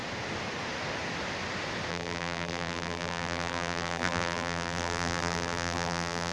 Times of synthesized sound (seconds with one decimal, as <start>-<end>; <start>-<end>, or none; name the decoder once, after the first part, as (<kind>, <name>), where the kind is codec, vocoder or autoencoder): 1.9-6.3 (vocoder, BigVGAN v2)